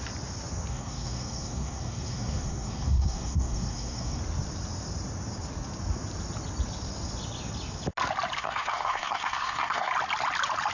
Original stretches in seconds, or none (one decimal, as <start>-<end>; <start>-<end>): 0.0-0.7; 4.2-8.4; 9.9-10.7